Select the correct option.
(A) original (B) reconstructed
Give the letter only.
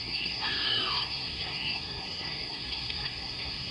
B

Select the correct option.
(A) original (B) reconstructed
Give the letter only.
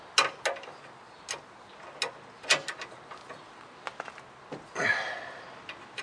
A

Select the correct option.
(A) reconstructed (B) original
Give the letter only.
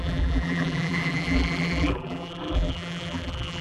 A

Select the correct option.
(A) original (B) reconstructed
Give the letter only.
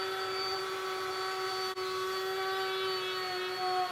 A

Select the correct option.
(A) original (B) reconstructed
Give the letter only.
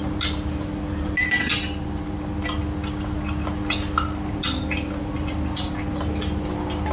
A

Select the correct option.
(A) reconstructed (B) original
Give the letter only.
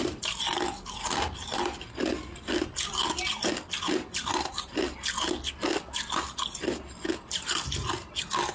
B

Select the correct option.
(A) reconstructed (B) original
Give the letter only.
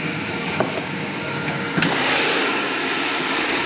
A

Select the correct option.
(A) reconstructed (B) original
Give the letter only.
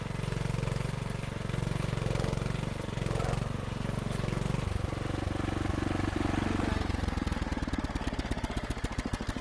B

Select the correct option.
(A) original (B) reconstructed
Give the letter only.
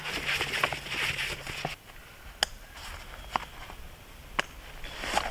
A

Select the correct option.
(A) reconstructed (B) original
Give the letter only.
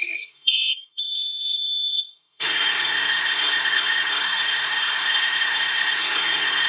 A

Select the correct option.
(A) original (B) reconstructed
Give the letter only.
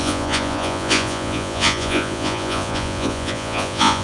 B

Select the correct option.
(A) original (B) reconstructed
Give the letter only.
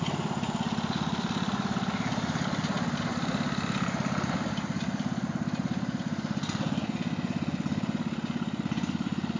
A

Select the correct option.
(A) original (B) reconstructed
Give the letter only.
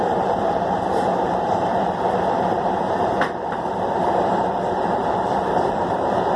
B